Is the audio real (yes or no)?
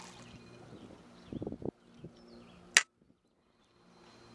yes